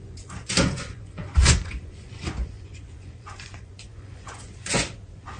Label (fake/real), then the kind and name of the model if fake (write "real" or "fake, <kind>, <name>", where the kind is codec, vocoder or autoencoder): fake, vocoder, Vocos